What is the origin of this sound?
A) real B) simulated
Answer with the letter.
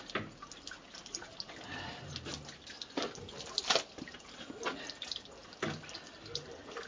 A